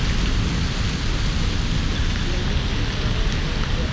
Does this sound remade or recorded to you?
recorded